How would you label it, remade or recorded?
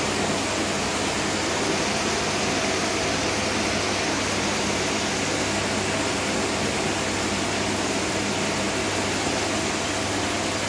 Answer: recorded